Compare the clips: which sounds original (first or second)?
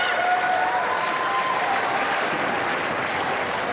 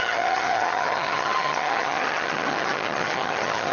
first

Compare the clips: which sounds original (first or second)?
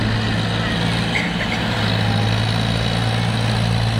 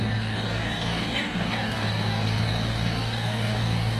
first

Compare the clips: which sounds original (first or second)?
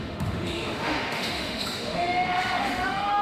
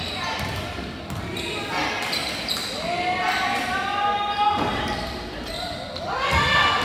second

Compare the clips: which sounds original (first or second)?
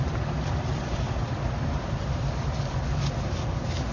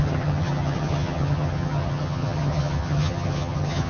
first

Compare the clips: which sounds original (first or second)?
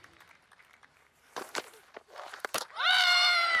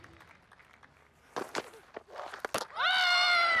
second